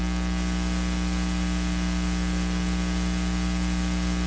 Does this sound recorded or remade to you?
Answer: recorded